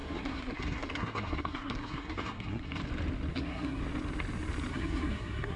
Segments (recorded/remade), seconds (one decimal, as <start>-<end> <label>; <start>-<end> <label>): 0.0-2.8 remade; 2.8-3.3 recorded; 3.3-3.8 remade; 3.8-4.7 recorded; 4.7-5.6 remade